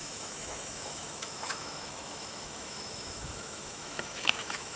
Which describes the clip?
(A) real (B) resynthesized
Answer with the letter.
B